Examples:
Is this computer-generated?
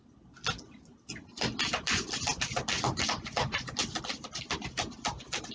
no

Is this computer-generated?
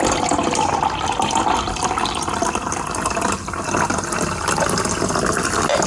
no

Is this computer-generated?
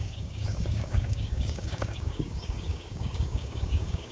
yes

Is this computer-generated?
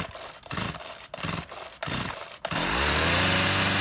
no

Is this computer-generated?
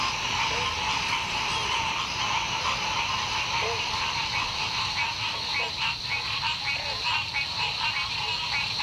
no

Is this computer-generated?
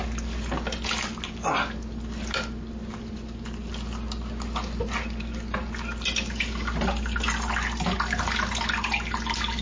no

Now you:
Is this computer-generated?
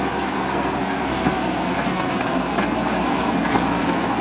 yes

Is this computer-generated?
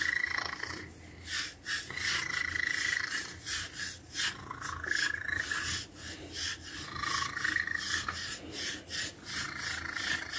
no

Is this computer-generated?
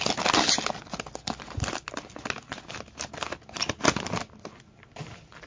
no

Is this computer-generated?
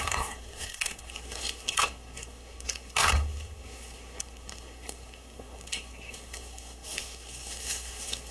yes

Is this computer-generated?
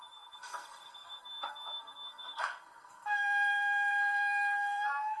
yes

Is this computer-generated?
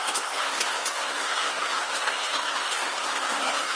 yes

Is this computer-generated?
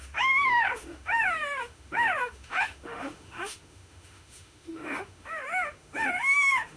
yes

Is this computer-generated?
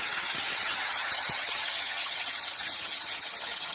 yes